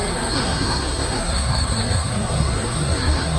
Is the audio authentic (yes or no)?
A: no